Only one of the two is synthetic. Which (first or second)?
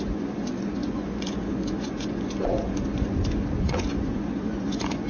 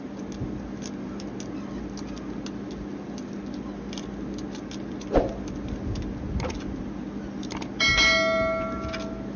first